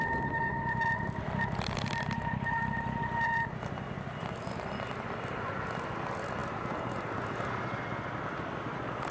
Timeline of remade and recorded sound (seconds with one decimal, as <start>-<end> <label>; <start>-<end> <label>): 0.0-9.1 recorded